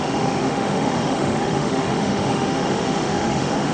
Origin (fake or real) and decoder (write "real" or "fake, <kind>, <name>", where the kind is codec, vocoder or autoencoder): fake, autoencoder, DAC-VAE